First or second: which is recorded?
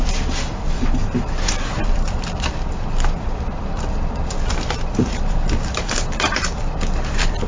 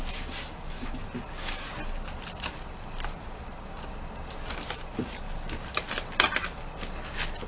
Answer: second